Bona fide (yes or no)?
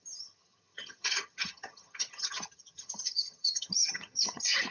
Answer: no